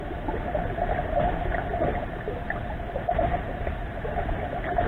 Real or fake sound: real